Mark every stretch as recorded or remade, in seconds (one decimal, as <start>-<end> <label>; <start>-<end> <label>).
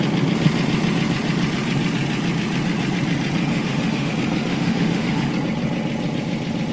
0.0-3.5 recorded; 3.5-4.1 remade; 4.1-4.5 recorded; 4.5-5.3 remade; 5.3-6.7 recorded